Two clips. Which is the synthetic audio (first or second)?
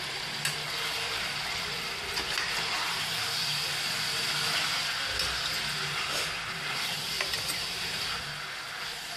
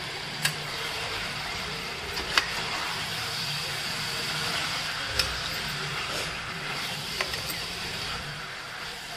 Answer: second